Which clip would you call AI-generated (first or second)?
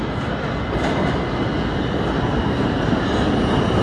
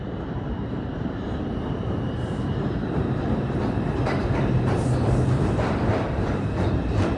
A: second